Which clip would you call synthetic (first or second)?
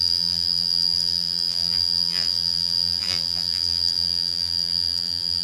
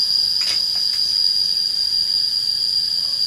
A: first